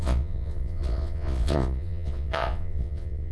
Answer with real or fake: fake